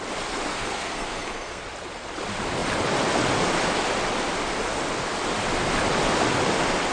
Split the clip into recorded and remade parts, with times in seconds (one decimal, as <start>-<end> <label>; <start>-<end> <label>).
0.0-0.5 recorded; 0.5-1.6 remade; 1.6-6.9 recorded